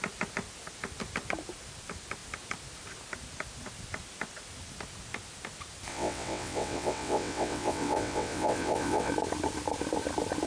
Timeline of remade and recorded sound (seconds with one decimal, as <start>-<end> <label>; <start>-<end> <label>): 0.0-5.9 recorded; 5.9-9.1 remade; 9.1-10.5 recorded